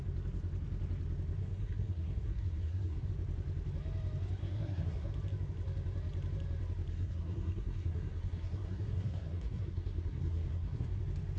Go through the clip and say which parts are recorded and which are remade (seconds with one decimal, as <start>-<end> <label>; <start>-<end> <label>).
0.0-1.4 recorded; 1.4-3.1 remade; 3.1-4.4 recorded; 4.4-5.1 remade; 5.1-6.9 recorded; 6.9-11.0 remade; 11.0-11.4 recorded